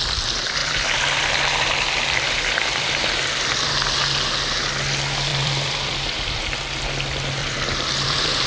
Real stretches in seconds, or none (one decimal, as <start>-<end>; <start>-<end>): 0.0-0.6; 3.7-5.3; 6.4-7.4